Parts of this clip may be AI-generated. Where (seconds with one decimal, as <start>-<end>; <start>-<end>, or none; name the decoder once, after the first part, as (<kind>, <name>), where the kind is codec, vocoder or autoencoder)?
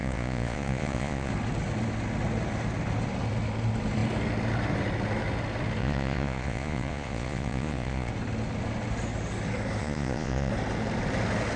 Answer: 0.0-1.3 (vocoder, Vocos); 5.8-8.1; 9.8-10.5